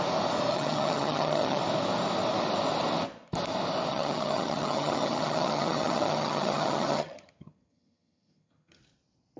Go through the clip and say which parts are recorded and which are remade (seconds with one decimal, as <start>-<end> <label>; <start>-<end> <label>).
0.0-0.5 recorded; 0.5-1.6 remade; 1.6-3.9 recorded; 3.9-8.8 remade; 8.8-9.4 recorded